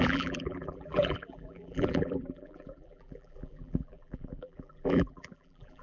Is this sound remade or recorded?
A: remade